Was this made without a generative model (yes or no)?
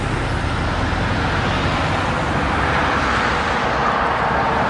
yes